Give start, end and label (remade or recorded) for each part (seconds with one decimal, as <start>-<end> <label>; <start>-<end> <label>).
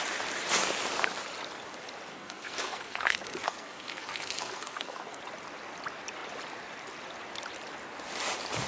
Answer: 0.0-2.1 recorded; 2.1-5.2 remade; 5.2-8.7 recorded